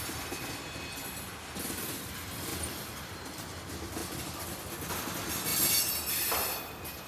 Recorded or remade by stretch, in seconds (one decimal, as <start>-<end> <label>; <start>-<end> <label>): 0.0-2.5 recorded; 2.5-3.6 remade; 3.6-4.0 recorded; 4.0-4.6 remade; 4.6-5.5 recorded; 5.5-6.2 remade; 6.2-7.1 recorded